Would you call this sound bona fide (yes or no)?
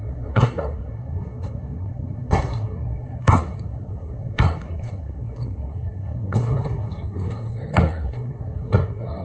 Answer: no